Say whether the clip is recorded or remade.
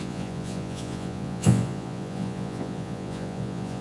remade